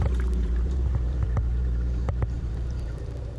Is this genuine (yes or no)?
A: no